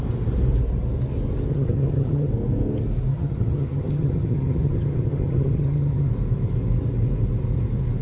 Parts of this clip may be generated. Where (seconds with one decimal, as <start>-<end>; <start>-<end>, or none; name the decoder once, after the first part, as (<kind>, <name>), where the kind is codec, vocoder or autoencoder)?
1.5-2.3 (vocoder, HiFi-GAN); 3.1-6.1